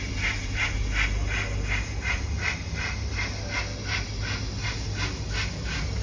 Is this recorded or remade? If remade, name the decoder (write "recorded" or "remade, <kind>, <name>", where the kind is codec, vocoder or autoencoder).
recorded